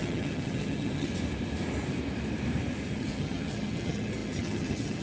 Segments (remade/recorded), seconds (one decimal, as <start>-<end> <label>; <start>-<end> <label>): 0.0-1.1 remade; 1.1-2.9 recorded; 2.9-5.0 remade